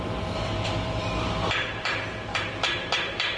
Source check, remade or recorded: remade